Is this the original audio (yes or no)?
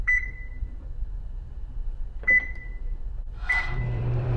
no